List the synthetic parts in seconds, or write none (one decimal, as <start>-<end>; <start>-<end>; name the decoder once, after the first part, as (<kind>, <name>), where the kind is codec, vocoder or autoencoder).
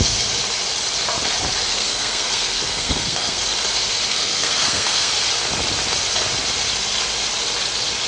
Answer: 1.7-3.4 (codec, SNAC); 4.1-5.1